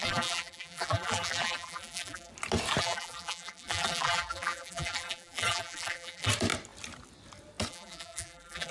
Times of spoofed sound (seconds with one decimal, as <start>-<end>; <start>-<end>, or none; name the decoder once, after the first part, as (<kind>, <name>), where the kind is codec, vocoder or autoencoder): 0.0-2.3 (vocoder, BigVGAN v2); 2.8-6.3; 7.7-8.7